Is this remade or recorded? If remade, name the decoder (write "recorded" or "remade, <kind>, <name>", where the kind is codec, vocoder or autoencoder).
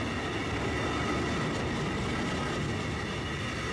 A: recorded